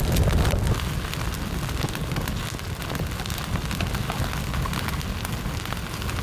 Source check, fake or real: real